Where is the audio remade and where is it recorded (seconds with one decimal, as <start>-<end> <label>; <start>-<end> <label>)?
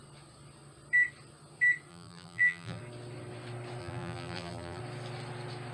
0.0-1.9 recorded; 1.9-2.8 remade; 2.8-3.8 recorded; 3.8-4.8 remade; 4.8-5.7 recorded